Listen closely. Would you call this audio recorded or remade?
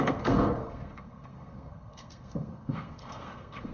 remade